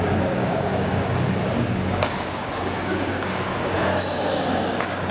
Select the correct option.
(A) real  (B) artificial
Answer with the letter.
B